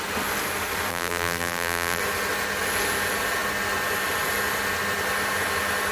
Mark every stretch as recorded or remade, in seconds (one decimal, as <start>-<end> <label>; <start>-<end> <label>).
0.0-0.9 recorded; 0.9-2.0 remade; 2.0-5.9 recorded